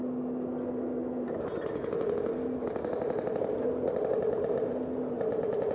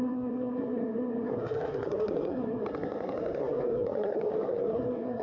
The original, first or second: first